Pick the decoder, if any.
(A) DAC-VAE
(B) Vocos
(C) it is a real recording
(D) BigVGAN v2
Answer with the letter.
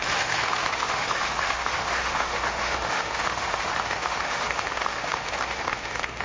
A